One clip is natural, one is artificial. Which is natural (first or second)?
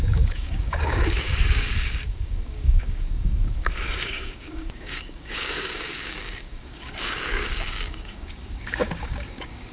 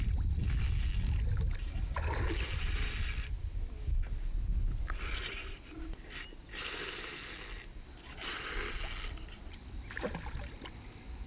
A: second